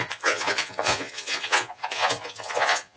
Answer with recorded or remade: remade